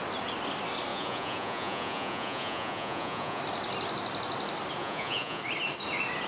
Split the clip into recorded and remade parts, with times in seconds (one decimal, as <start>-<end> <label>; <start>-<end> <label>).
0.0-0.9 recorded; 0.9-3.4 remade; 3.4-4.8 recorded; 4.8-5.4 remade; 5.4-6.3 recorded